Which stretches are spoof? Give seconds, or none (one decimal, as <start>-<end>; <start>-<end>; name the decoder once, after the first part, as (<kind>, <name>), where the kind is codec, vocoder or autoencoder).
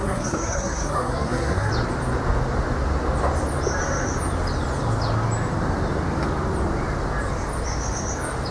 0.0-1.7 (codec, SNAC)